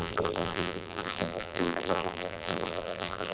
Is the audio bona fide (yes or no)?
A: no